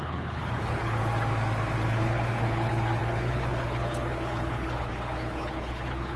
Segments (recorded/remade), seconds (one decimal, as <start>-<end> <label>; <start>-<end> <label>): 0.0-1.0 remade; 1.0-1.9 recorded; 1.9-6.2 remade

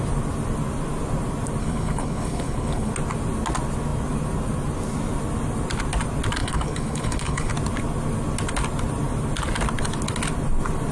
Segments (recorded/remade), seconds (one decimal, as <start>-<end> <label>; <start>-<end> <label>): 0.0-1.6 recorded; 1.6-2.9 remade; 2.9-6.4 recorded; 6.4-7.5 remade; 7.5-10.9 recorded

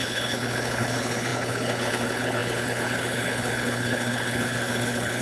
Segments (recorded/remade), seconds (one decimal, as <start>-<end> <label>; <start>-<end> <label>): 0.0-5.2 remade

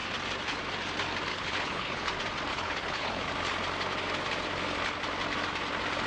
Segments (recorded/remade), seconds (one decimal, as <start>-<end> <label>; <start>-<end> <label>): 0.0-1.3 recorded; 1.3-2.1 remade; 2.1-2.5 recorded; 2.5-3.3 remade; 3.3-6.1 recorded

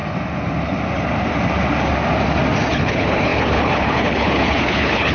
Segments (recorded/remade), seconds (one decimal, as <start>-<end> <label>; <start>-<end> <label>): 0.0-2.7 recorded; 2.7-5.1 remade

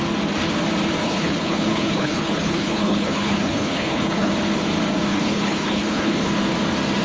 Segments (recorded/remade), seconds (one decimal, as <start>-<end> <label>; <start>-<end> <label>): 0.0-1.0 recorded; 1.0-4.3 remade; 4.3-5.1 recorded; 5.1-6.3 remade; 6.3-7.0 recorded

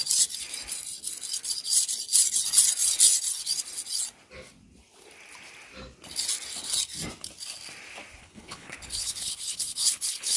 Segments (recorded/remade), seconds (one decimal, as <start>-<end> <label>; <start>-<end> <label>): 0.0-8.2 recorded; 8.2-10.4 remade

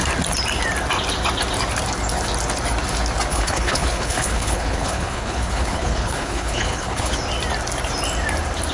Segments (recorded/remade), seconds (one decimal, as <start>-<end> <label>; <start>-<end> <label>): 0.0-3.3 recorded; 3.3-7.1 remade; 7.1-8.7 recorded